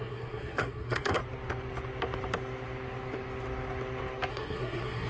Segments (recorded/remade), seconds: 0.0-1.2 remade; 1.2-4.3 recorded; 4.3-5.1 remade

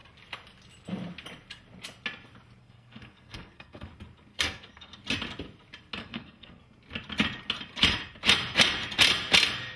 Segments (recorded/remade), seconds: 0.0-2.6 recorded; 2.6-3.9 remade; 3.9-4.3 recorded; 4.3-5.0 remade; 5.0-6.0 recorded; 6.0-6.6 remade; 6.6-9.8 recorded

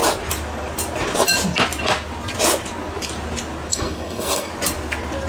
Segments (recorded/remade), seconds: 0.0-3.7 recorded; 3.7-4.5 remade; 4.5-5.3 recorded

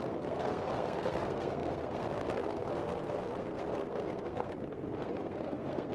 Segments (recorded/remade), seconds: 0.0-5.9 remade

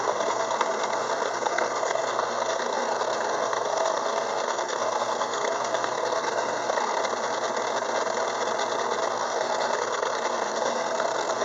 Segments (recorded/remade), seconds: 0.0-7.0 remade; 7.0-9.1 recorded; 9.1-11.4 remade

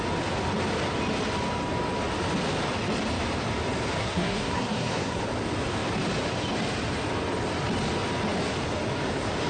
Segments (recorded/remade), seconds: 0.0-4.0 recorded; 4.0-5.2 remade; 5.2-9.5 recorded

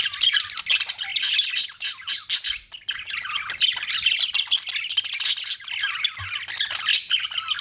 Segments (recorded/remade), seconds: 0.0-7.6 recorded